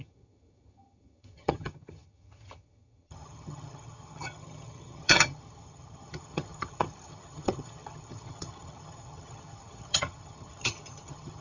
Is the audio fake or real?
fake